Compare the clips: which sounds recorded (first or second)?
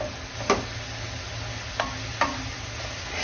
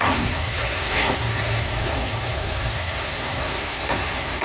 first